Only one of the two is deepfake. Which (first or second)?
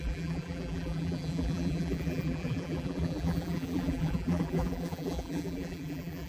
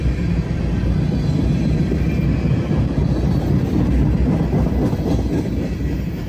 first